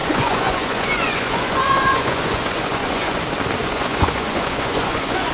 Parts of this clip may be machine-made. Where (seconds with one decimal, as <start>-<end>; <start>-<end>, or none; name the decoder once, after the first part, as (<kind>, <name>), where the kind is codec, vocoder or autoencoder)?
0.0-3.2 (vocoder, Vocos); 3.6-5.3